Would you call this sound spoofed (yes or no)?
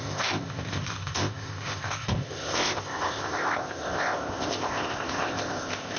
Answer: yes